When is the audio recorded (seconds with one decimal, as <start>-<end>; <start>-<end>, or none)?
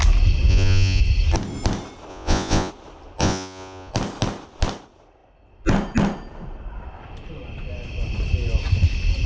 0.0-0.5; 1.0-2.1; 2.7-3.2; 3.9-9.3